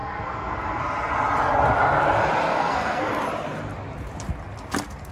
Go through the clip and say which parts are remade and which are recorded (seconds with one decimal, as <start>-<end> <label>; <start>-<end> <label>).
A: 0.0-0.8 remade; 0.8-2.5 recorded; 2.5-3.1 remade; 3.1-5.1 recorded